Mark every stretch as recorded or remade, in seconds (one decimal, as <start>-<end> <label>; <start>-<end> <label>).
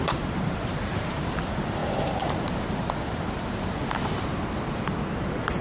0.0-3.8 remade; 3.8-4.3 recorded; 4.3-5.6 remade